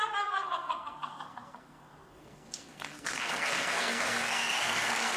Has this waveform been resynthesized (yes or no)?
yes